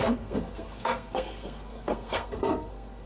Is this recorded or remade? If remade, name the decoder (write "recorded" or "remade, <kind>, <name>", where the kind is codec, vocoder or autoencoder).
remade, codec, SNAC